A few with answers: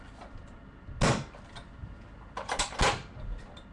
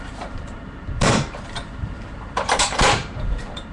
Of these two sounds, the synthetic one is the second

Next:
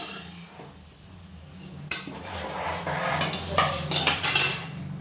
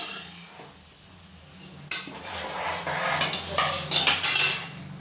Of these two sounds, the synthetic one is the first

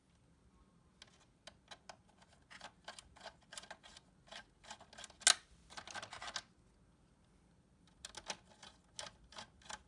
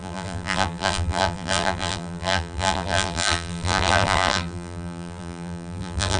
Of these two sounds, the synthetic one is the second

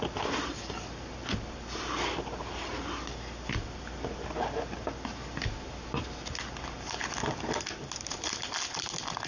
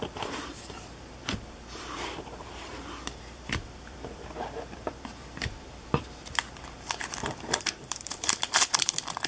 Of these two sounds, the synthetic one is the second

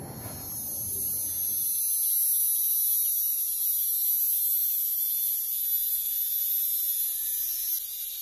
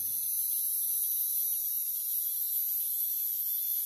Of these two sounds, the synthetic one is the second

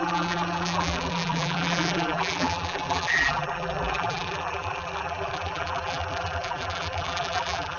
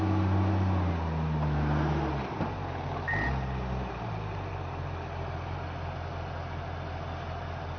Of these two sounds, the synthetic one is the first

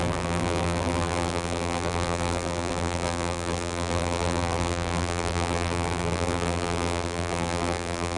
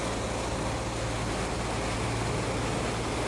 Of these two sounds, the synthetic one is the first